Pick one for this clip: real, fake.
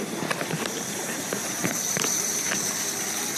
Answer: fake